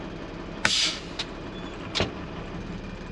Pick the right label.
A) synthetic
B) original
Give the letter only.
B